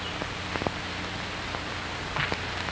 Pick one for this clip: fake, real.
real